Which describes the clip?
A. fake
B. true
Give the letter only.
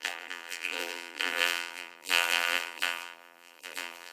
A